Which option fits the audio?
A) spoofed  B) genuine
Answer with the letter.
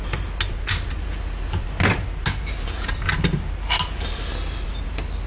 B